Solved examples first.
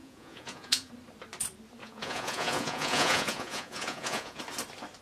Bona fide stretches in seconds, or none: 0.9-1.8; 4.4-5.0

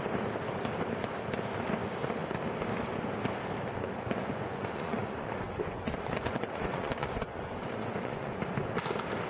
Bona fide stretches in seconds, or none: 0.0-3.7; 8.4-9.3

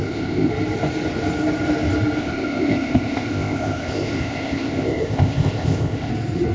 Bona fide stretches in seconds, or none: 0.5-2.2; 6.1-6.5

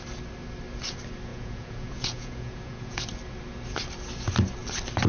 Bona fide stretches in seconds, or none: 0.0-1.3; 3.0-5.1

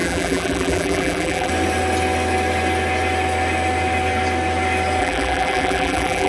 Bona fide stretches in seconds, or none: 1.5-5.0

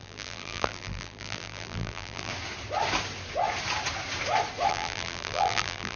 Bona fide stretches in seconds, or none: 2.3-4.7